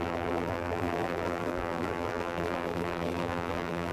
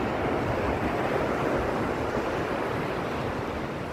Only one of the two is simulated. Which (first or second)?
first